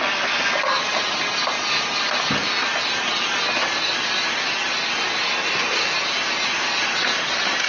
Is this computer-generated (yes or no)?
no